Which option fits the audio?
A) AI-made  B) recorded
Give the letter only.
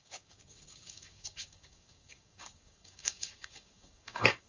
A